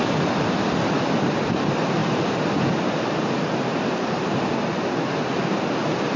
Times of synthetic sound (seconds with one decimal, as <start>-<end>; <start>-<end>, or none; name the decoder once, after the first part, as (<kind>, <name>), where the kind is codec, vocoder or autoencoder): none